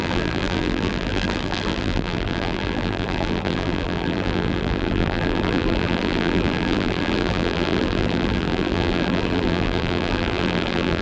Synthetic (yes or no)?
yes